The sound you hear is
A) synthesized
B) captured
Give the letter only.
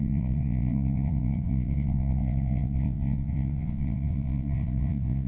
A